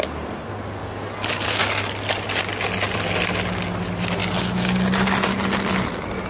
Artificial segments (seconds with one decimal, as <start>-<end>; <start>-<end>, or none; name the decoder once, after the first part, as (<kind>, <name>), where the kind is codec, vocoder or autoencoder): none